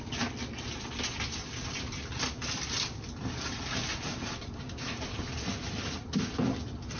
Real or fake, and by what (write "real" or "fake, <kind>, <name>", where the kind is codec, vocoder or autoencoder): real